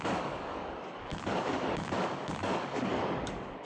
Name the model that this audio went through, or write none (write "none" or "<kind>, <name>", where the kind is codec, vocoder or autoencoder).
codec, DAC